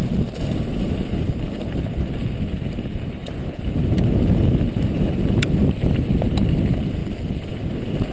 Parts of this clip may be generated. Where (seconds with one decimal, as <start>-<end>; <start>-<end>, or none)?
none